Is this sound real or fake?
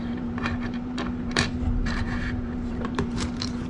fake